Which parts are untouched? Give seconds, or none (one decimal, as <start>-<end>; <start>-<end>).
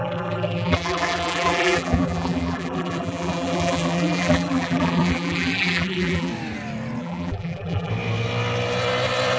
6.3-7.0; 7.9-9.4